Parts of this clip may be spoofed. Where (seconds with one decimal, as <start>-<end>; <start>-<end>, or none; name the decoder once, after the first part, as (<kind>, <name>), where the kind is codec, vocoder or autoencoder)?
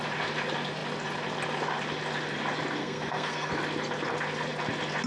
2.8-3.5 (codec, SNAC)